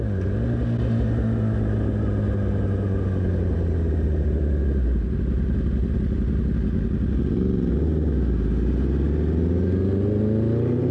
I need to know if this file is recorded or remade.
recorded